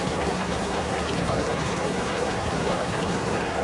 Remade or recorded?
remade